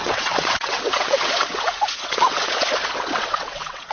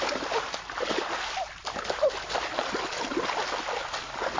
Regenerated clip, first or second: first